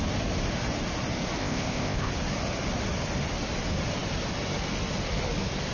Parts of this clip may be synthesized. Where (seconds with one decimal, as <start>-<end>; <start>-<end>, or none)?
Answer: 1.4-2.1